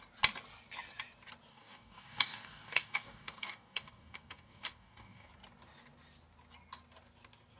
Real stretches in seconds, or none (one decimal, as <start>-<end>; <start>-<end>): 0.0-1.5; 5.3-7.6